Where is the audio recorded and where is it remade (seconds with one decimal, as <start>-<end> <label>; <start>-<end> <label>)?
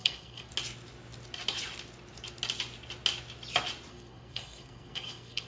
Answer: 0.0-0.5 remade; 0.5-3.9 recorded; 3.9-5.5 remade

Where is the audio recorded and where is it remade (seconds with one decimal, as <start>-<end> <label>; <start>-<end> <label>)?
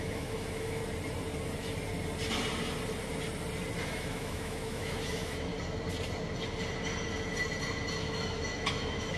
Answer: 0.0-0.8 remade; 0.8-3.8 recorded; 3.8-5.5 remade; 5.5-8.0 recorded; 8.0-9.2 remade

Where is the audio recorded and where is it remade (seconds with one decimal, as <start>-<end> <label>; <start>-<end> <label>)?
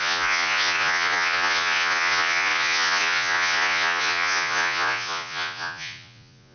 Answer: 0.0-6.5 remade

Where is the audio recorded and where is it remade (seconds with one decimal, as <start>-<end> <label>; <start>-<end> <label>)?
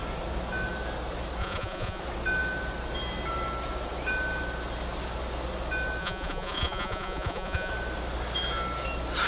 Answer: 0.0-1.4 recorded; 1.4-2.0 remade; 2.0-6.0 recorded; 6.0-7.7 remade; 7.7-9.3 recorded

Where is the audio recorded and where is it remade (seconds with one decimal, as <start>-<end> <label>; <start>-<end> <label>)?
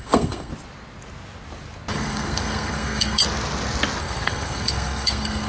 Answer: 0.0-0.5 remade; 0.5-1.9 recorded; 1.9-3.2 remade; 3.2-4.0 recorded; 4.0-5.5 remade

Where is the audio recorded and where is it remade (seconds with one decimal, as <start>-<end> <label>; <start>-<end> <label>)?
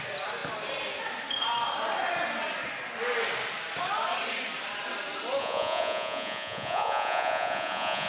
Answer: 0.0-5.4 recorded; 5.4-8.1 remade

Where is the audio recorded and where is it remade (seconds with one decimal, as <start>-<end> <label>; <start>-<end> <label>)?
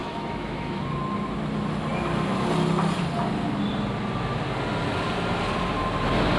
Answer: 0.0-0.8 remade; 0.8-6.4 recorded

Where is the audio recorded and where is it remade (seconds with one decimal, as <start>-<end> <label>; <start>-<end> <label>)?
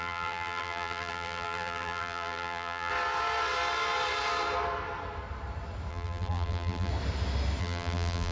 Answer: 0.0-2.9 remade; 2.9-5.9 recorded; 5.9-6.9 remade; 6.9-7.6 recorded; 7.6-8.3 remade